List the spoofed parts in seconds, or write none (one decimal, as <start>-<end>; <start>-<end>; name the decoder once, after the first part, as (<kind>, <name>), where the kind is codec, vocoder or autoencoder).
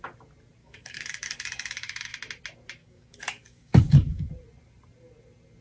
0.6-2.1 (codec, DAC); 2.8-4.3